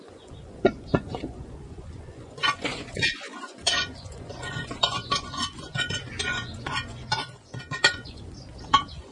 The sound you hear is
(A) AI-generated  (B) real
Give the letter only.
A